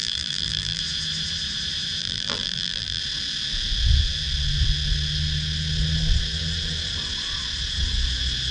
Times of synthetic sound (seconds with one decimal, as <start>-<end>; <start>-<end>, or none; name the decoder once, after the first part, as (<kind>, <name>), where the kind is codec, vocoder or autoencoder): 0.0-0.8 (vocoder, BigVGAN v2); 2.0-3.0